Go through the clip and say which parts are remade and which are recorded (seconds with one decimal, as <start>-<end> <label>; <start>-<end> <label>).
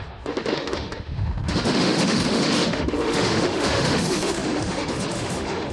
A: 0.0-5.7 remade